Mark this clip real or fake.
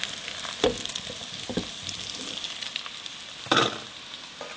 real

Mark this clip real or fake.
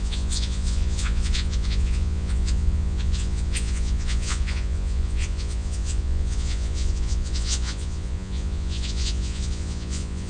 fake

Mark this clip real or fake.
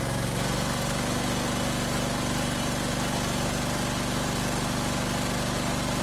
real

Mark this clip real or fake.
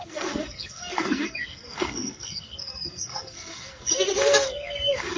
fake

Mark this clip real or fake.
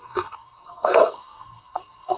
fake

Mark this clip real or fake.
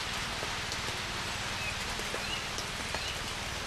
real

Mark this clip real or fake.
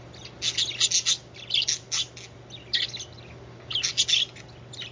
real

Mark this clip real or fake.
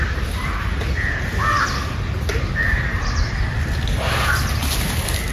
real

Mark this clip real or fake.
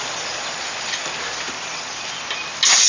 real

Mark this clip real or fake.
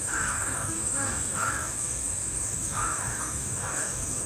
fake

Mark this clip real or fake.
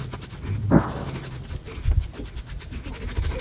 real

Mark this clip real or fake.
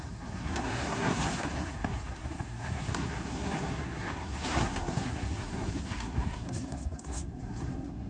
fake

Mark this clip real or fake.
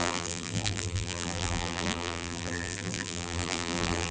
fake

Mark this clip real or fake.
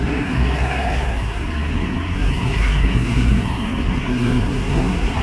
fake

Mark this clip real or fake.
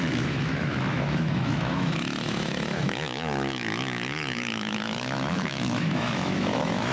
fake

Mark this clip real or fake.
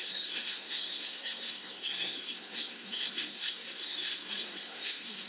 fake